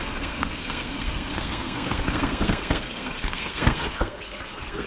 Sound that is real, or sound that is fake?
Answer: fake